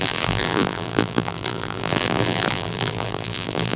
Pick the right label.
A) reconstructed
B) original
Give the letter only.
A